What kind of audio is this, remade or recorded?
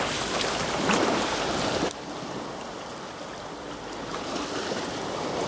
recorded